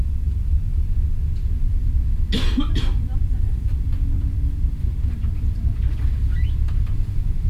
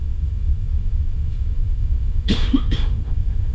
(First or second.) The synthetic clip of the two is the second